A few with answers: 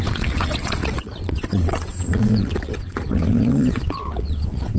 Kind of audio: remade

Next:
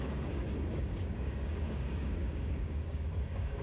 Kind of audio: remade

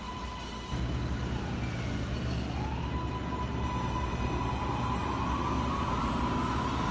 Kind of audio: recorded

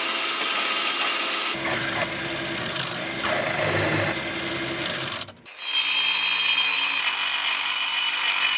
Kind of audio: recorded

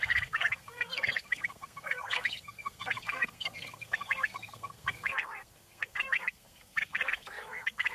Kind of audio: remade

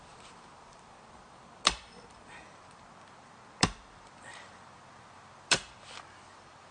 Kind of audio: remade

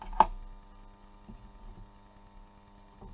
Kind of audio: recorded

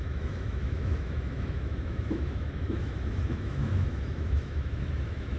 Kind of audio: remade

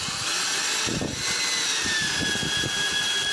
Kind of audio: recorded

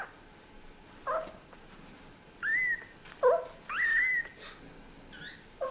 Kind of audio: recorded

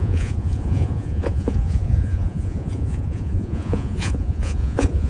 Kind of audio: remade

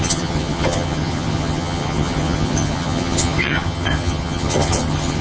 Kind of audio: remade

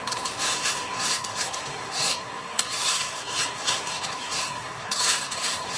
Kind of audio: remade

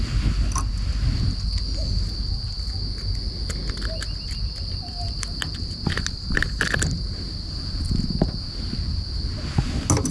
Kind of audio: recorded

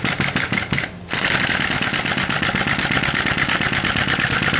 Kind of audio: recorded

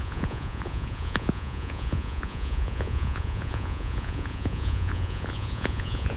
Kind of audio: remade